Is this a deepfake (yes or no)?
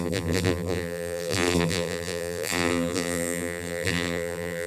yes